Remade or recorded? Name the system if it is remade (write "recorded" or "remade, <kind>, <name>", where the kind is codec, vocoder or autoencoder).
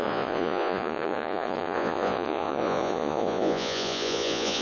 remade, vocoder, Vocos